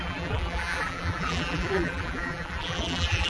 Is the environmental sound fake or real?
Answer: fake